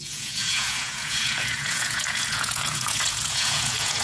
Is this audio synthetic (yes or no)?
yes